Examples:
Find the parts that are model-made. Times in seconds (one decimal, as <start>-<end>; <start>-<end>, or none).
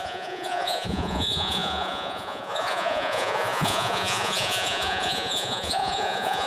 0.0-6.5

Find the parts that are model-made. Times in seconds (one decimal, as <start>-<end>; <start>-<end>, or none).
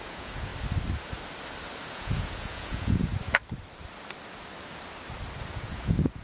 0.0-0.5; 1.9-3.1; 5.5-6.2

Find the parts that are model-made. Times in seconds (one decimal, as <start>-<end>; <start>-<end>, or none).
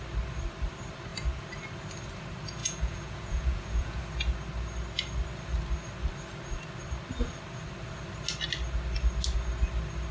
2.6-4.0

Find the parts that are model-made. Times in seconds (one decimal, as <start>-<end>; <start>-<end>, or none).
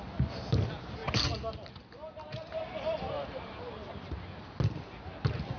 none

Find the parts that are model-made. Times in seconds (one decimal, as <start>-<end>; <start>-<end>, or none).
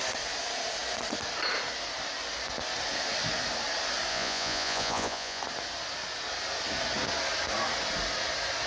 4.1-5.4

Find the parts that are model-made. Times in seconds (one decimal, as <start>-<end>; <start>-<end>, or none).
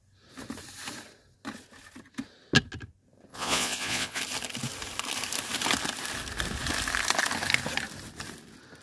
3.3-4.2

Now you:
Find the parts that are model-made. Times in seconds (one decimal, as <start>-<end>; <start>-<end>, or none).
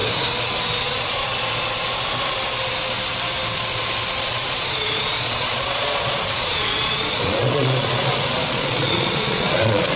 0.8-1.3; 4.2-10.0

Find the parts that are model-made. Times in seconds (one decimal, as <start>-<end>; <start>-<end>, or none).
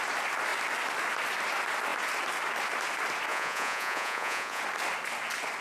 3.3-4.6